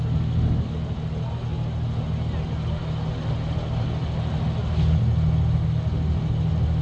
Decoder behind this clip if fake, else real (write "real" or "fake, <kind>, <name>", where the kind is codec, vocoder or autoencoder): real